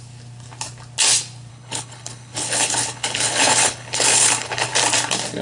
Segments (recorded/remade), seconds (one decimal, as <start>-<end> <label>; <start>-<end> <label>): 0.0-1.5 recorded; 1.5-4.7 remade; 4.7-5.4 recorded